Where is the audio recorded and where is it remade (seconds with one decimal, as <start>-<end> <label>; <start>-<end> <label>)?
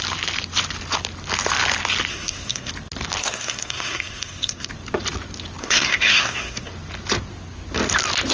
0.0-2.1 recorded; 2.1-2.7 remade; 2.7-3.2 recorded; 3.2-4.7 remade; 4.7-5.6 recorded; 5.6-6.7 remade; 6.7-8.3 recorded